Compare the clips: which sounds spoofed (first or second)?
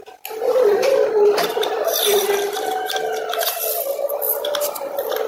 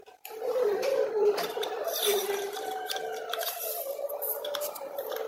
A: second